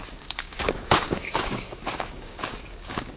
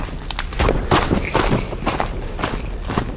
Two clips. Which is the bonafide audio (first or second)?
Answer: second